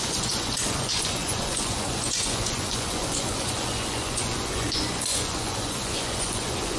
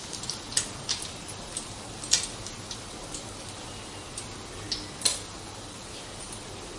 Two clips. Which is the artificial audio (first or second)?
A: first